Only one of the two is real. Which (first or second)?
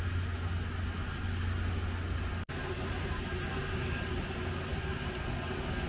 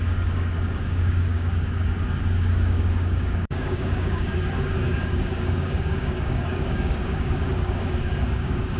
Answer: first